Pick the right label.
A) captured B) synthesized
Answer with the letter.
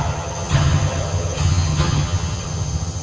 B